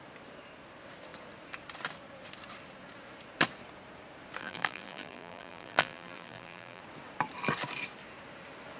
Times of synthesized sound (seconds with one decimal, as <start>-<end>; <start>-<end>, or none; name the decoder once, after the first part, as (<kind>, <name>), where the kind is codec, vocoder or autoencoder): 4.4-6.8 (vocoder, BigVGAN v2)